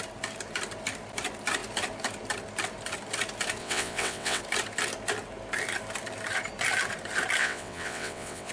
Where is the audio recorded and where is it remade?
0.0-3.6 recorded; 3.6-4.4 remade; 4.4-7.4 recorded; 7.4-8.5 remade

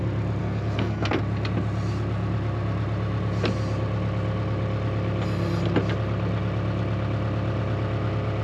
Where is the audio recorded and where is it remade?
0.0-0.4 recorded; 0.4-1.2 remade; 1.2-8.4 recorded

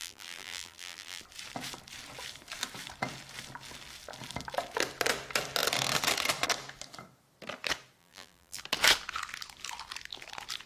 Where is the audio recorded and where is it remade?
0.0-1.2 remade; 1.2-8.0 recorded; 8.0-8.6 remade; 8.6-10.7 recorded

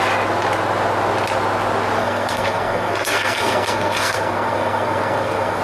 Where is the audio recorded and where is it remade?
0.0-2.0 recorded; 2.0-5.6 remade

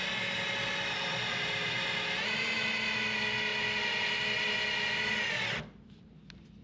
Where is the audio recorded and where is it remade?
0.0-6.6 recorded

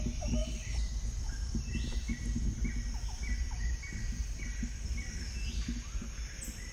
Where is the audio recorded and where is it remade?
0.0-6.7 recorded

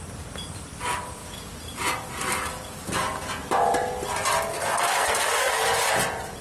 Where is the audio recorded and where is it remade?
0.0-4.5 recorded; 4.5-5.6 remade; 5.6-6.4 recorded

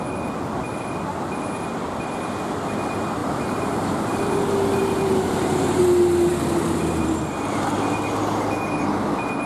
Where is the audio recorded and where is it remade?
0.0-3.2 recorded; 3.2-4.3 remade; 4.3-4.8 recorded; 4.8-5.8 remade; 5.8-6.3 recorded; 6.3-6.8 remade; 6.8-9.5 recorded